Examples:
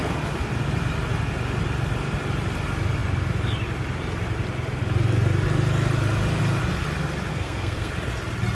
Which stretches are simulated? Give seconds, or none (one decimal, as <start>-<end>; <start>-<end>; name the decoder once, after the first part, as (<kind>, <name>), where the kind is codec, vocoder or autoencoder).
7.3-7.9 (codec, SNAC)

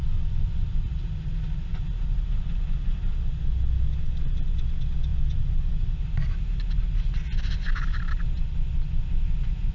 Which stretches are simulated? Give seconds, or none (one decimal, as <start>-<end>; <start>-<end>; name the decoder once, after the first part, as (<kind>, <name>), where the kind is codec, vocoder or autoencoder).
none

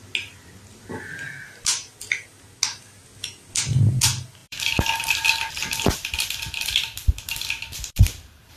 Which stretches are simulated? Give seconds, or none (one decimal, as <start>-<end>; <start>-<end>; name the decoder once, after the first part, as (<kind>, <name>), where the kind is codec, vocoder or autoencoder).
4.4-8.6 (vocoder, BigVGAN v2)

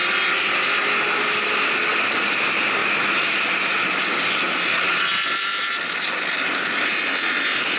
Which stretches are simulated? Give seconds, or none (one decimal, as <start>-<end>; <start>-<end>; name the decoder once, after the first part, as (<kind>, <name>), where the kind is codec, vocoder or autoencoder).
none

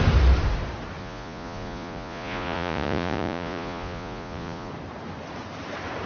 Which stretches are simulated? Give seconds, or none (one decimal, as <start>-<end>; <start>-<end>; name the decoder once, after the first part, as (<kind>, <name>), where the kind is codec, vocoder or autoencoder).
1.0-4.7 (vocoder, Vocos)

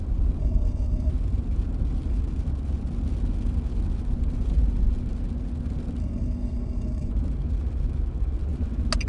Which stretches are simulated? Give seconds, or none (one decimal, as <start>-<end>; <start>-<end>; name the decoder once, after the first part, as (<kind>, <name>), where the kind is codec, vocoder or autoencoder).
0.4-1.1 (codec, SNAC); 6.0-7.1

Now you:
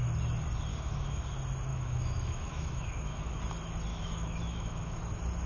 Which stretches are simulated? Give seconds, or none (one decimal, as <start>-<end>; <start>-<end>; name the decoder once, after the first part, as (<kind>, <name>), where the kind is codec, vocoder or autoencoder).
0.7-1.2 (autoencoder, DAC-VAE); 1.7-3.4; 3.9-5.0

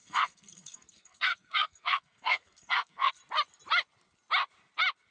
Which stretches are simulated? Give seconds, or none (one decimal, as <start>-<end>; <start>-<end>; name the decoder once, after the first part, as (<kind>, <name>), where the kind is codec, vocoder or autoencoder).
0.0-3.1 (codec, SNAC)